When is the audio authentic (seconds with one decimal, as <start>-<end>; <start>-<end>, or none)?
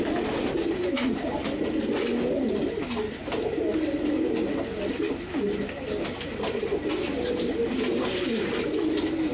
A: 0.0-9.3